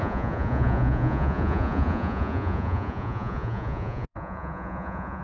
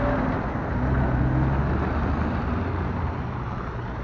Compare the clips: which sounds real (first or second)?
second